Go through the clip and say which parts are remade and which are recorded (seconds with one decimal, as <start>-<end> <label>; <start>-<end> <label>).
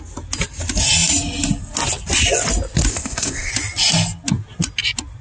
0.0-2.9 recorded; 2.9-3.5 remade; 3.5-5.2 recorded